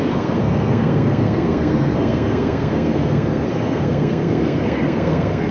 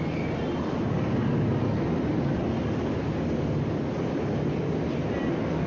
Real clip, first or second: second